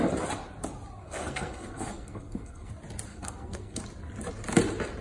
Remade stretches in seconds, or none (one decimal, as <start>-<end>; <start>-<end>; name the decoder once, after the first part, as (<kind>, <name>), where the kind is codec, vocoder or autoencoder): 1.0-2.7 (codec, SNAC); 3.1-3.8